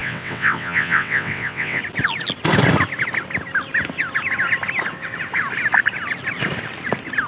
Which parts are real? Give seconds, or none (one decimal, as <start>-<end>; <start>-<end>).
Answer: 1.8-7.3